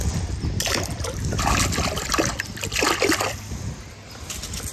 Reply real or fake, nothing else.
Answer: real